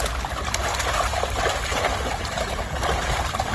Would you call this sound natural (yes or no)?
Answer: yes